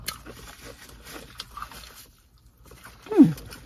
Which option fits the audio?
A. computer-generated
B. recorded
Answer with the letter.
B